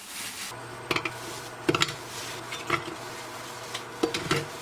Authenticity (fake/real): real